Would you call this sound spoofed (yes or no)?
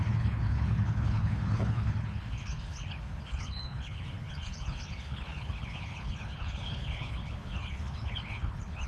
yes